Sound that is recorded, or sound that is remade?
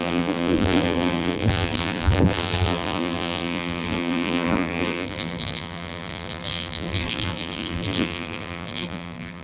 remade